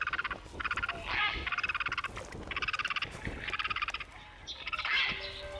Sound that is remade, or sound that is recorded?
recorded